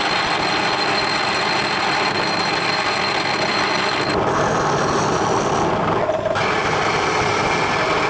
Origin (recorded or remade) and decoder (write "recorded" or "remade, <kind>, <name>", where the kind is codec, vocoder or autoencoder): recorded